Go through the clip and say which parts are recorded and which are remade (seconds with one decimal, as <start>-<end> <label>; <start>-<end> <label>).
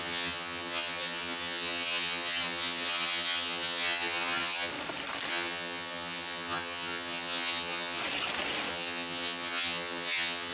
0.0-4.7 remade; 4.7-5.3 recorded; 5.3-8.0 remade; 8.0-8.7 recorded; 8.7-10.5 remade